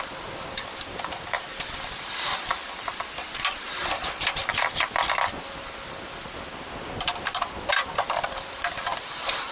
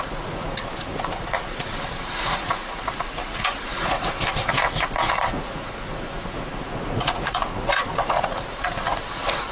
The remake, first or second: second